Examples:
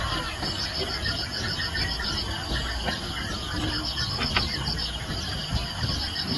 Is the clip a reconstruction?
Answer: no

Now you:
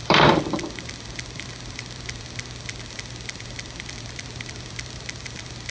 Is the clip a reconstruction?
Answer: yes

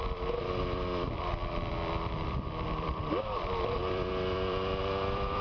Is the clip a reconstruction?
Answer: yes